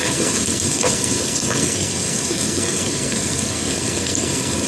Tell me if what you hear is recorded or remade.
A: remade